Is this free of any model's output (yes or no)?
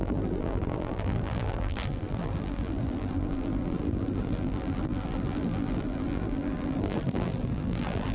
no